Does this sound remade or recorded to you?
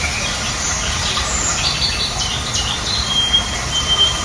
remade